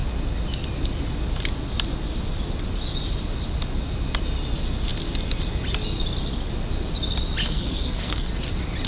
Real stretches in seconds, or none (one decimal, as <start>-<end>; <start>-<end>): 0.0-7.4; 8.3-8.9